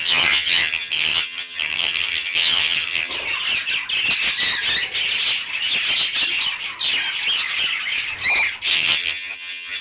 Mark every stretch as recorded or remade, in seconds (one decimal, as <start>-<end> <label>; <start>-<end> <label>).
0.0-3.1 remade; 3.1-8.7 recorded; 8.7-9.8 remade